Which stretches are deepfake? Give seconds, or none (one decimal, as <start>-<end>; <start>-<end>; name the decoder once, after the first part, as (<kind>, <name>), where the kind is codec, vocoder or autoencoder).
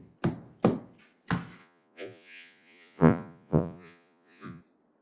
1.6-4.6 (vocoder, Vocos)